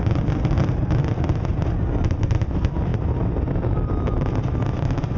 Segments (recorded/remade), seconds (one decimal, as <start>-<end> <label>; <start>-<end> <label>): 0.0-1.5 remade; 1.5-2.2 recorded; 2.2-5.2 remade